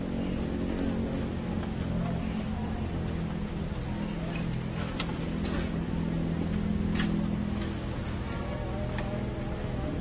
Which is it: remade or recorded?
recorded